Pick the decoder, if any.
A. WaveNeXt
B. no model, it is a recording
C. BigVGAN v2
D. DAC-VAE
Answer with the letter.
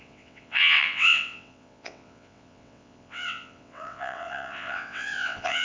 A